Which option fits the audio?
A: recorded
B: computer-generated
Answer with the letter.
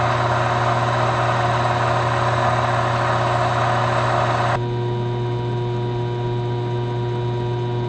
A